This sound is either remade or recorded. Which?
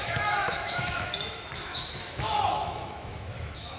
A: remade